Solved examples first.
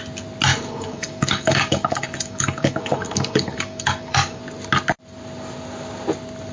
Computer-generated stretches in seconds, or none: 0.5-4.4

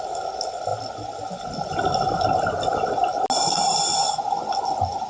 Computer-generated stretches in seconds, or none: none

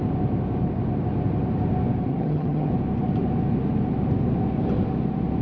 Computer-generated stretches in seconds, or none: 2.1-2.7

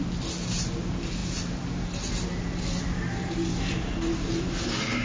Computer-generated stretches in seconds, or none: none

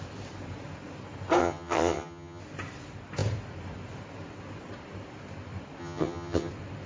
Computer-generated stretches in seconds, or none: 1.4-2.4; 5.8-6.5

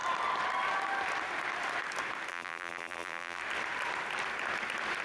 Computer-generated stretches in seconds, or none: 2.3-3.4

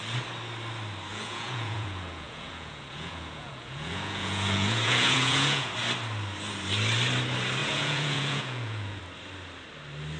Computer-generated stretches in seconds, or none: 1.1-5.7; 7.6-9.0

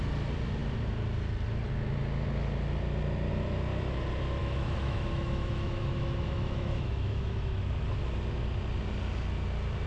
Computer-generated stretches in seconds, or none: 4.4-7.6